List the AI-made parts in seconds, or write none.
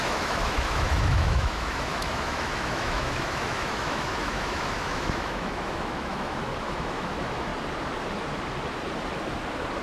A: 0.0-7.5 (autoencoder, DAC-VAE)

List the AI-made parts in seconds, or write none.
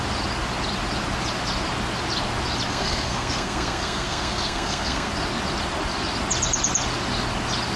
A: 2.7-5.1 (codec, SNAC)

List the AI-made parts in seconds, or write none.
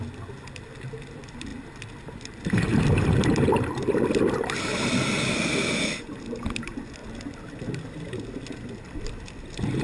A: none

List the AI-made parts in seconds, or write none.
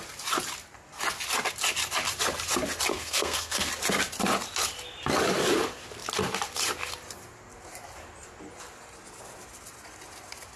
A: 2.9-3.7 (codec, SNAC)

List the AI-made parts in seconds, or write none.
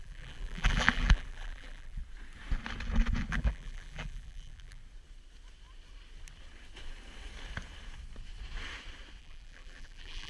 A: 0.0-2.0 (vocoder, BigVGAN v2); 3.3-4.8; 9.2-10.3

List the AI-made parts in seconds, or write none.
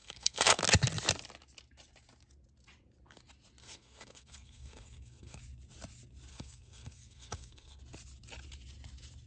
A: 0.0-0.6 (codec, SNAC); 3.6-5.4; 6.3-7.8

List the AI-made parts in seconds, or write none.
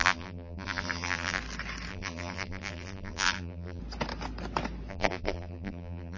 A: 0.0-1.4 (vocoder, BigVGAN v2); 1.9-3.8; 4.9-6.2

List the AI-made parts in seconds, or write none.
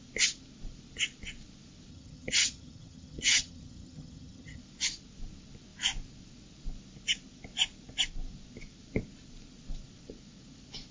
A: 1.9-4.6 (vocoder, HiFi-GAN)